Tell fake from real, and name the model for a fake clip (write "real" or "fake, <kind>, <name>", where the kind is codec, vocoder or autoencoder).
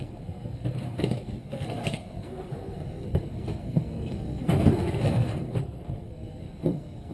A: fake, codec, SNAC